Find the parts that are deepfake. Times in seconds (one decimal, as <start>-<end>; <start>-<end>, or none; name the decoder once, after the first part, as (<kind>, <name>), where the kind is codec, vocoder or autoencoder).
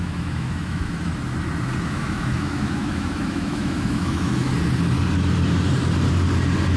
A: 0.0-1.1 (autoencoder, DAC-VAE); 1.8-4.5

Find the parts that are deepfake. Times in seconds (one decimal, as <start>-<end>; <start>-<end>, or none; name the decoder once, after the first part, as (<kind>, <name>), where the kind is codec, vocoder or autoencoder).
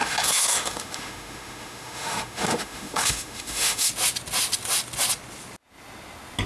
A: 0.0-3.9 (autoencoder, DAC-VAE)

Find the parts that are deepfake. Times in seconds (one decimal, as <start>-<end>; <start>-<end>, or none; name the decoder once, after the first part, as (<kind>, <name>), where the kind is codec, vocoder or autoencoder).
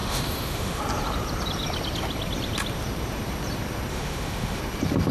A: 0.0-0.8 (autoencoder, DAC-VAE); 3.9-4.6